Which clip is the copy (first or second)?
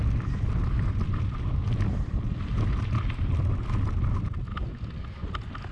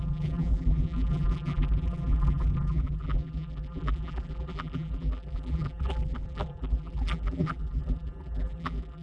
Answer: second